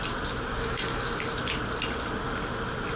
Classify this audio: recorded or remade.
recorded